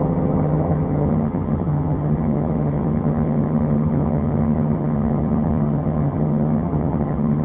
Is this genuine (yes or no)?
no